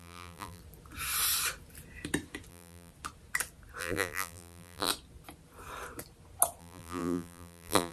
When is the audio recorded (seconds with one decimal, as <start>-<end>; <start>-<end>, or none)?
0.6-2.5; 2.9-3.8; 4.9-6.6